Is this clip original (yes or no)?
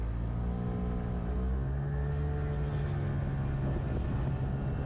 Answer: yes